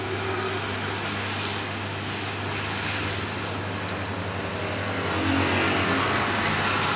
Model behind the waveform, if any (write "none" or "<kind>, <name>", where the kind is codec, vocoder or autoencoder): none